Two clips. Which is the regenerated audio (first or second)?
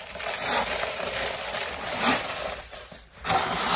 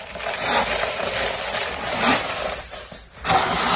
first